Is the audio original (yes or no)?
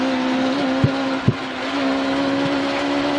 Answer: yes